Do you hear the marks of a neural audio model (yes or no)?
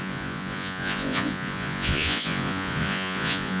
yes